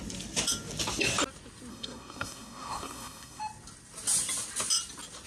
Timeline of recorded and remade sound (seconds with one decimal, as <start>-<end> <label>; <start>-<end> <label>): 0.0-1.7 recorded; 1.7-3.4 remade; 3.4-5.3 recorded

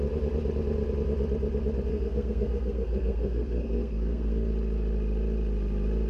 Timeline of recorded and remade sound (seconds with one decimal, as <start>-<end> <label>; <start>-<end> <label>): 0.0-1.9 recorded; 1.9-4.5 remade; 4.5-6.1 recorded

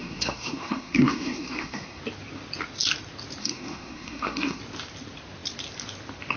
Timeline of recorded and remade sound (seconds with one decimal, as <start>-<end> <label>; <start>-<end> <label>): 0.0-2.0 remade; 2.0-3.4 recorded; 3.4-4.6 remade; 4.6-6.4 recorded